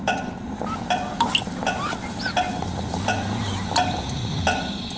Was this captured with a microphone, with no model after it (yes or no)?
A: yes